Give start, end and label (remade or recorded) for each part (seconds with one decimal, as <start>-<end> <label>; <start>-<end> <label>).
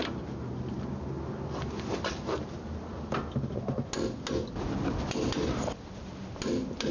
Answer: 0.0-6.9 recorded